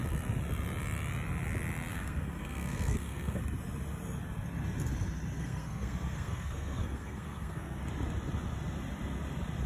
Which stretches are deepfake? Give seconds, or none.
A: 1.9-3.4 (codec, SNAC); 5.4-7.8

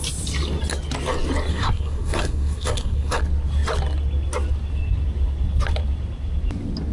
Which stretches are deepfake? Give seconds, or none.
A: 1.5-3.2 (codec, SNAC)

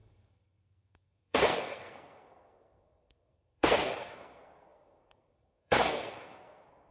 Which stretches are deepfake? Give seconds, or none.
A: 0.0-6.9 (codec, SNAC)

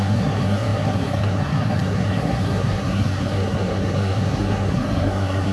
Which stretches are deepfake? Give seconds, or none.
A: 0.0-5.5 (codec, SNAC)

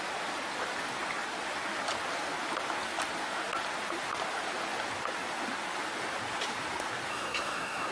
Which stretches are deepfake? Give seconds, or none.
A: 7.1-7.9 (codec, SNAC)